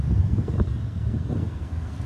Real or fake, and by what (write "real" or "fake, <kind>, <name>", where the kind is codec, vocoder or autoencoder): fake, codec, SNAC